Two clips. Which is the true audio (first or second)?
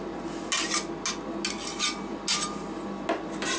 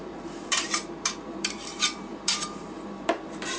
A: first